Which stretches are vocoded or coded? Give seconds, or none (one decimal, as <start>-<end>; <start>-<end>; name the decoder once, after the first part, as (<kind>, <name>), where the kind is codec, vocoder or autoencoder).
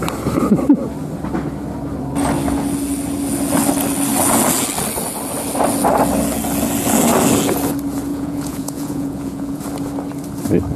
8.1-9.6 (vocoder, Vocos)